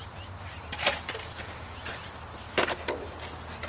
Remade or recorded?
recorded